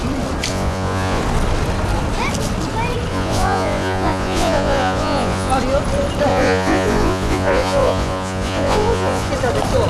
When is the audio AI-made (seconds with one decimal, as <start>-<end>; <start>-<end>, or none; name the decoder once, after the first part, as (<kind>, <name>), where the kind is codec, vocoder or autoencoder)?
0.5-1.2 (vocoder, Vocos); 3.1-5.5; 6.3-9.3